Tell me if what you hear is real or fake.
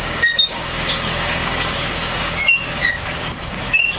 fake